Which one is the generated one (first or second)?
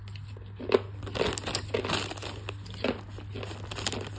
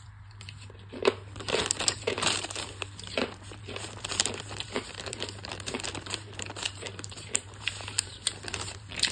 second